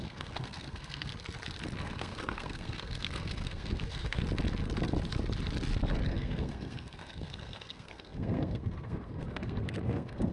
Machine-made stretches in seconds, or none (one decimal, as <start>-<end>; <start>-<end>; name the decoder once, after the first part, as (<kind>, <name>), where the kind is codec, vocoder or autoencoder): 0.0-1.1 (codec, SNAC); 1.8-4.2; 6.1-10.3